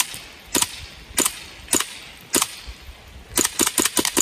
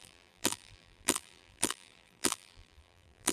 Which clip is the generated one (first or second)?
second